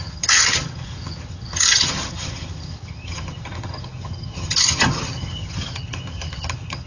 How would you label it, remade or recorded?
remade